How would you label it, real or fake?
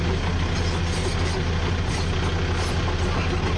real